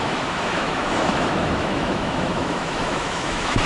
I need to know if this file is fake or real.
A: fake